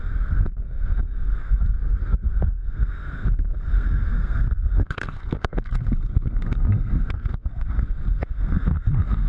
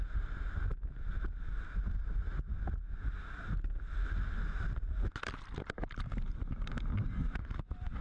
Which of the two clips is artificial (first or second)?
first